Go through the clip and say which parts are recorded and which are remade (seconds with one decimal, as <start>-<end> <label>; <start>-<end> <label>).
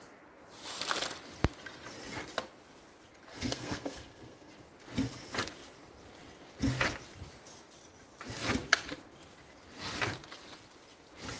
0.0-3.3 recorded; 3.3-4.5 remade; 4.5-11.4 recorded